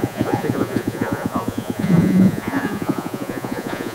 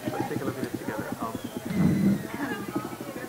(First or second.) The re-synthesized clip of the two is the first